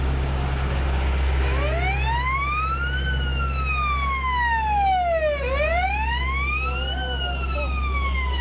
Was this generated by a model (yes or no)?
no